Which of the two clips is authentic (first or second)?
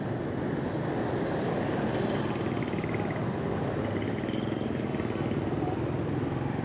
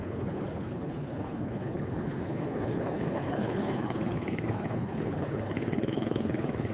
first